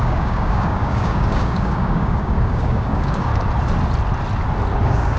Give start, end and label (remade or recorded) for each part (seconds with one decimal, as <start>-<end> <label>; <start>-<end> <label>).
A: 0.0-3.3 remade; 3.3-4.8 recorded; 4.8-5.2 remade